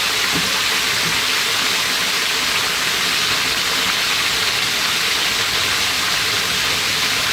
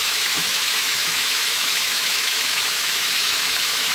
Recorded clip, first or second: first